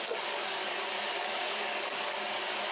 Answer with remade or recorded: remade